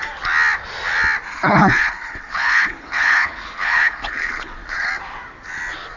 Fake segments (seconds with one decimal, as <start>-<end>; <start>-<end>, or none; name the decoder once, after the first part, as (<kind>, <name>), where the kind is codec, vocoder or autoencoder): 1.3-4.9 (codec, HILCodec)

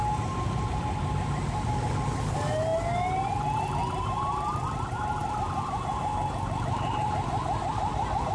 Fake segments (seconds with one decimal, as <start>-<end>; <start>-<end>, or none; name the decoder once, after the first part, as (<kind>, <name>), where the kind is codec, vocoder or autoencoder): none

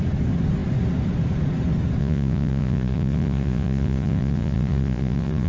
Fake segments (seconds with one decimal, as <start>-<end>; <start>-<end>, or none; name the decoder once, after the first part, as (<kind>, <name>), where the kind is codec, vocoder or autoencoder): 2.0-5.5 (vocoder, Vocos)

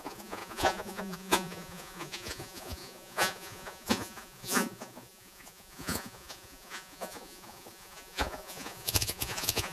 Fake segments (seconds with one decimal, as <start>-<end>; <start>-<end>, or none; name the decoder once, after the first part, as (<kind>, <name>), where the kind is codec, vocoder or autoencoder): 0.0-9.7 (vocoder, Vocos)